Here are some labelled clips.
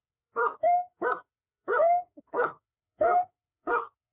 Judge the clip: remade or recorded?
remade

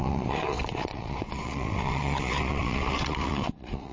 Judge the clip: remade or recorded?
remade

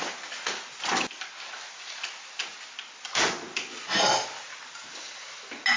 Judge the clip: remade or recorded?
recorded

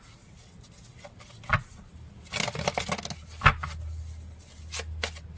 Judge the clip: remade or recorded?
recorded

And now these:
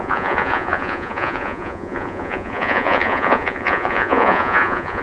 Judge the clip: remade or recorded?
remade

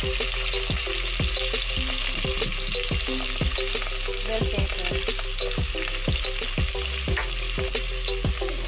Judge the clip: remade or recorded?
recorded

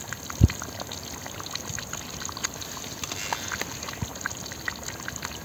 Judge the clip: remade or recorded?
recorded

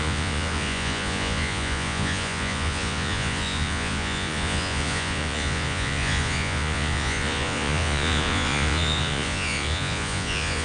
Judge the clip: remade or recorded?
remade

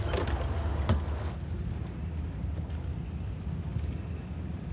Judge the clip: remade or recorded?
recorded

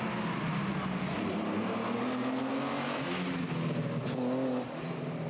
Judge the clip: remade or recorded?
recorded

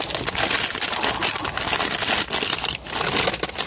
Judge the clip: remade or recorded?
recorded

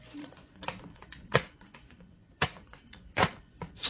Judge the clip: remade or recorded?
remade